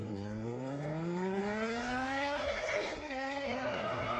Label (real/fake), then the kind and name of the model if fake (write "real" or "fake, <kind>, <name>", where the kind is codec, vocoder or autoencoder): fake, codec, SNAC